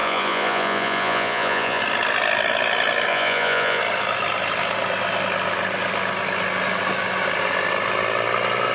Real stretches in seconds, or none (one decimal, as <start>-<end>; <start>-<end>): 1.8-3.1; 3.8-8.7

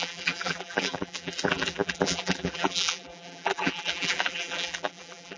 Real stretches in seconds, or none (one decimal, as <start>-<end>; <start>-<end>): none

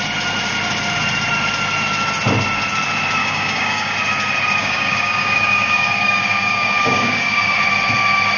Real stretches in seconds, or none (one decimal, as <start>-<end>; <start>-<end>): 0.0-3.2; 3.9-4.6; 7.6-8.4

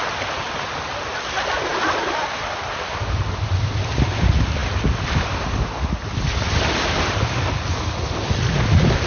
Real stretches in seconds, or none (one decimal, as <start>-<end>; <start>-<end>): 0.0-9.1

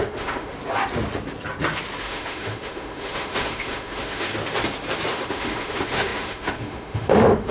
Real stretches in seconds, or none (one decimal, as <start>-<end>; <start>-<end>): 0.5-2.0; 4.3-5.1

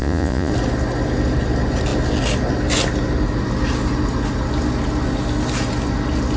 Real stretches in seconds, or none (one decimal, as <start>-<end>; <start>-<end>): 0.5-6.4